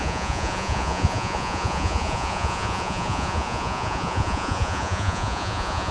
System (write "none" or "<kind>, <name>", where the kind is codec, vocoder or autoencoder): vocoder, Vocos